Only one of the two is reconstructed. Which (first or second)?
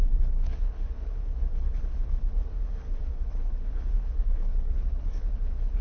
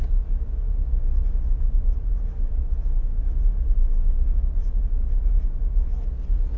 first